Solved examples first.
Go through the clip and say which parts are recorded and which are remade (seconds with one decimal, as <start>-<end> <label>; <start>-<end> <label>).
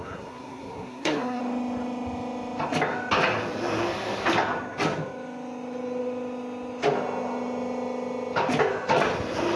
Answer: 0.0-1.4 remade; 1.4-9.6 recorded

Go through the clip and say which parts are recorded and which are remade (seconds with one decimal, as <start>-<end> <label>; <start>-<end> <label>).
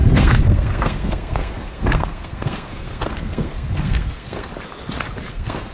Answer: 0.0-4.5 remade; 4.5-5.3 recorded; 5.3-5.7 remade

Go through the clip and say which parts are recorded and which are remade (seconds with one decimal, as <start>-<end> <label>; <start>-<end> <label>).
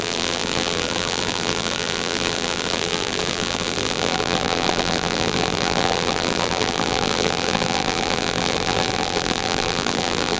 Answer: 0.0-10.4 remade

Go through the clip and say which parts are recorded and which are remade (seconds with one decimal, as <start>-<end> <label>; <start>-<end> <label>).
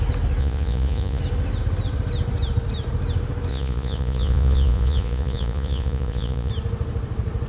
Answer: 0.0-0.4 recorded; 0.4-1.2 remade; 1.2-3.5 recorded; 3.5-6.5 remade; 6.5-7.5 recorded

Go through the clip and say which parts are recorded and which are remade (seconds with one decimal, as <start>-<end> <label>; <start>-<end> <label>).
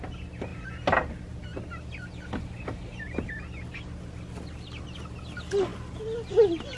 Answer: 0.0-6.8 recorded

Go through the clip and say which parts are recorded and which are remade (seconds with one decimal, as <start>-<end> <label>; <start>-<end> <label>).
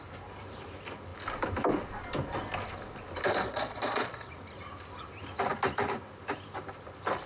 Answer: 0.0-3.4 recorded; 3.4-4.3 remade; 4.3-7.3 recorded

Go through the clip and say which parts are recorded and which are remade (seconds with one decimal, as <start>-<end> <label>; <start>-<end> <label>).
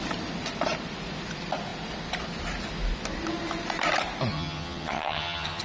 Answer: 0.0-4.3 recorded; 4.3-5.6 remade